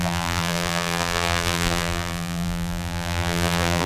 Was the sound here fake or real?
fake